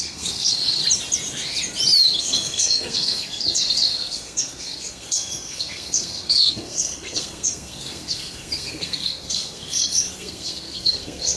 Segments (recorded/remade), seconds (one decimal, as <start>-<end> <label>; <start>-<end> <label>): 0.0-0.8 remade; 0.8-2.2 recorded; 2.2-11.4 remade